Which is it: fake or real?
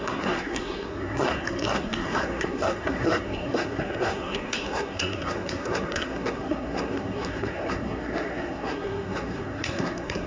fake